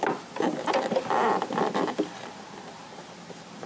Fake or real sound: real